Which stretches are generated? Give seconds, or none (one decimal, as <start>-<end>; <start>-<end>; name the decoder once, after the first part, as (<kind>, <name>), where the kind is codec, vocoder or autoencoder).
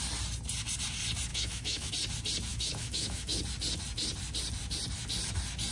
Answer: 1.3-1.9 (autoencoder, DAC-VAE); 2.5-3.4